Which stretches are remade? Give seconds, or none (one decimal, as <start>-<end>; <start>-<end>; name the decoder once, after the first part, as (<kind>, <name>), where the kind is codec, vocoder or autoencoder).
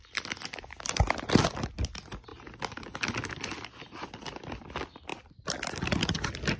none